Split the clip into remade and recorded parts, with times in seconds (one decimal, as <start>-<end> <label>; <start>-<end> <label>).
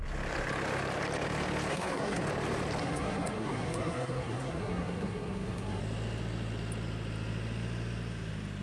0.0-1.7 recorded; 1.7-2.2 remade; 2.2-2.8 recorded; 2.8-5.8 remade; 5.8-8.6 recorded